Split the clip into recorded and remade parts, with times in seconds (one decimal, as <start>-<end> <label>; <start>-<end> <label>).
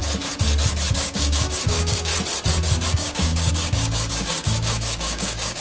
0.0-0.9 recorded; 0.9-2.1 remade; 2.1-2.9 recorded; 2.9-5.6 remade